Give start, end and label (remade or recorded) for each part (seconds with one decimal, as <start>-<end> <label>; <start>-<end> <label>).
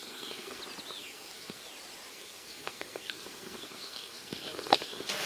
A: 0.0-0.6 remade; 0.6-1.0 recorded; 1.0-1.6 remade; 1.6-2.1 recorded; 2.1-5.3 remade